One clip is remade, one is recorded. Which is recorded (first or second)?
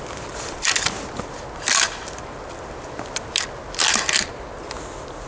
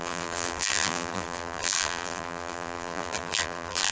first